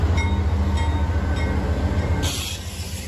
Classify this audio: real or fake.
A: real